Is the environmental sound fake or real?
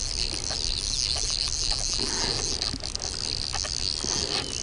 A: real